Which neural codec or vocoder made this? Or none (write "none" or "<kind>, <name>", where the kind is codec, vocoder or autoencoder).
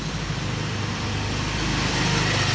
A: none